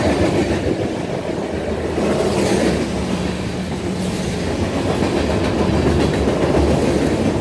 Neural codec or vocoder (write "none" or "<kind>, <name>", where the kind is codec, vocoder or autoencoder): none